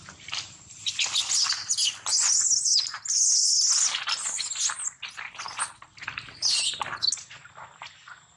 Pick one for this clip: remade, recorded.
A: recorded